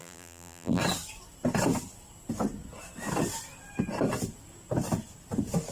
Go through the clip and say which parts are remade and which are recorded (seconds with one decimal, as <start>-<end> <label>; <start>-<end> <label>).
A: 0.0-0.8 remade; 0.8-5.7 recorded